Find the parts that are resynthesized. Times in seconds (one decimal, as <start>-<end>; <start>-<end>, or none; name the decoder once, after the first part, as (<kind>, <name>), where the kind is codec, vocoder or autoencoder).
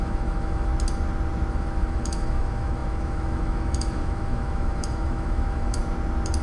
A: 0.0-0.7 (autoencoder, DAC-VAE); 1.5-5.8